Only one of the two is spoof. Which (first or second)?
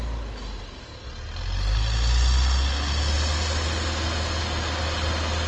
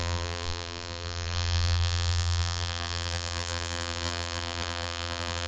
second